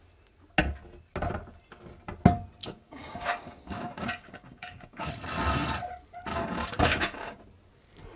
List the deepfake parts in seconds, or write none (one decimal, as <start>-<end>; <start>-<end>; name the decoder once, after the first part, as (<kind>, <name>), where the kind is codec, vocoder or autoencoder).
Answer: 2.6-5.1 (codec, DAC); 6.3-7.4